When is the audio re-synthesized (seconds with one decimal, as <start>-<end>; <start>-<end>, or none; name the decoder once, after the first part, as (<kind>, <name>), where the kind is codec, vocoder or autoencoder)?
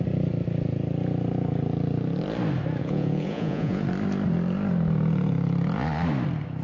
2.8-3.8 (vocoder, Vocos)